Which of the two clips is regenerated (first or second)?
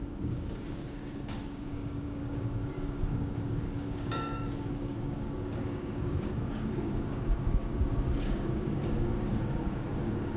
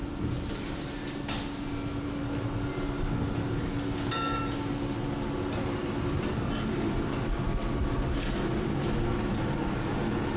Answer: first